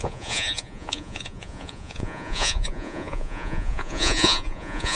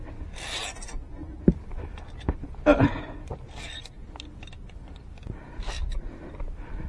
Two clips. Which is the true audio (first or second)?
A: second